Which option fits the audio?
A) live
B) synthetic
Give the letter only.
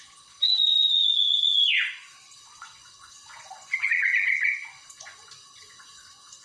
B